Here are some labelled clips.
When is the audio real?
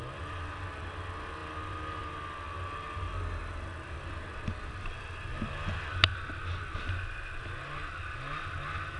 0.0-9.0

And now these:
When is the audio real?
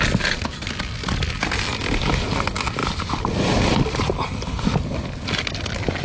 0.0-6.0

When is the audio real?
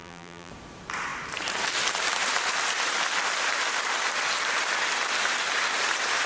0.5-6.3